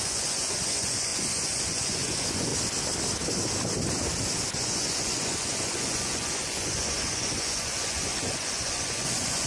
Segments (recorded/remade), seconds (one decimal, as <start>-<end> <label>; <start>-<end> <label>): 0.0-2.5 remade; 2.5-4.5 recorded; 4.5-9.5 remade